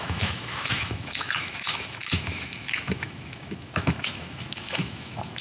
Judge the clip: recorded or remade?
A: remade